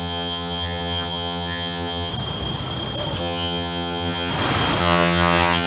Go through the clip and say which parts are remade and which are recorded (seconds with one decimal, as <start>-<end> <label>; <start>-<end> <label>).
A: 0.0-2.1 remade; 2.1-3.2 recorded; 3.2-4.3 remade; 4.3-4.8 recorded; 4.8-5.7 remade